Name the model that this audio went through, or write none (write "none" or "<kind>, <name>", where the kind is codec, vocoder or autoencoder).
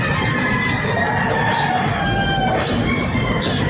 vocoder, BigVGAN v2